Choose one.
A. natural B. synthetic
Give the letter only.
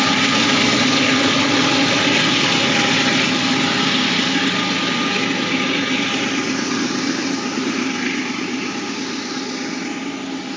A